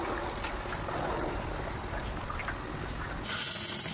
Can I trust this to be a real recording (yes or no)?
yes